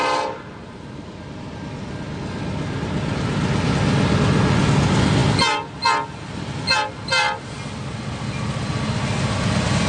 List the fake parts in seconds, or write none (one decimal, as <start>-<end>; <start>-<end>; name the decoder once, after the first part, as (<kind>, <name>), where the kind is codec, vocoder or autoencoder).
0.0-1.2 (vocoder, BigVGAN v2)